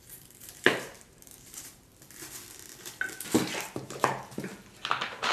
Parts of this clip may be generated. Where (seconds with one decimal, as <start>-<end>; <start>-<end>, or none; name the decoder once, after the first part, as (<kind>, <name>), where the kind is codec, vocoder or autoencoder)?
0.0-1.9 (vocoder, BigVGAN v2); 3.5-4.5